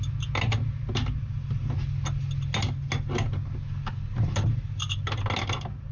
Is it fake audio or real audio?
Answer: real